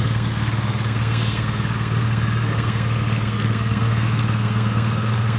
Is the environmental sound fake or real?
fake